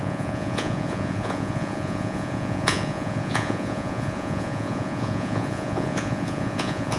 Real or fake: fake